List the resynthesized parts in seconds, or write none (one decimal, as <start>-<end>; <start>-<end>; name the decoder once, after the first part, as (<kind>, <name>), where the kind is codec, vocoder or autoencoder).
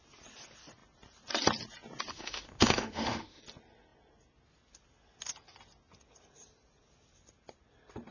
2.1-3.4 (autoencoder, DAC-VAE)